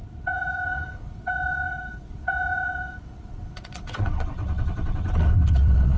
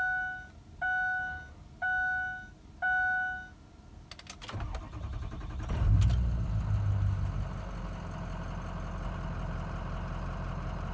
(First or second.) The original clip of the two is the second